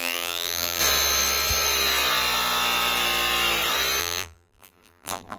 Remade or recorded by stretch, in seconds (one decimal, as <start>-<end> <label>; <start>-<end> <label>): 0.0-0.8 remade; 0.8-4.0 recorded; 4.0-5.4 remade